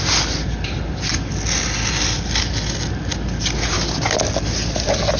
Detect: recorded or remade recorded